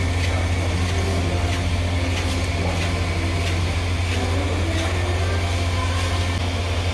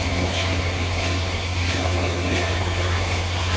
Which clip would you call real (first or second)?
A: first